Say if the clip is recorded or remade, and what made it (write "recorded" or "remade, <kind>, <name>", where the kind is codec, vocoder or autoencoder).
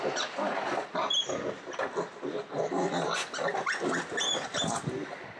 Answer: recorded